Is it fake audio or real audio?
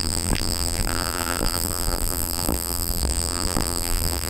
fake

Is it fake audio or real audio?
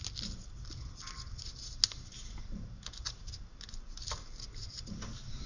real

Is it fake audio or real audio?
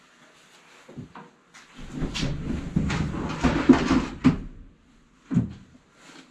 real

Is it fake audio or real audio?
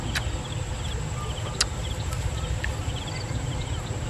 real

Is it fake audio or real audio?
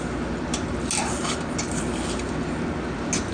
real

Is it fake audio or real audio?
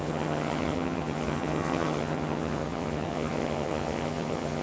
fake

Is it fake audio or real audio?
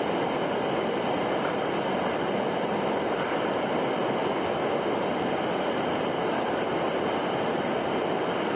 real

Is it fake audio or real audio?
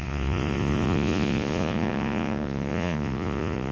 fake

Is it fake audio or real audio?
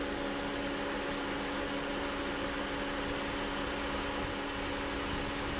real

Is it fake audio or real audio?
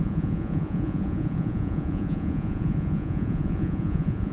fake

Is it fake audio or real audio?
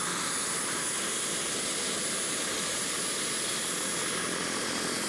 real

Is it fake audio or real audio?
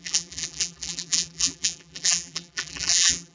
fake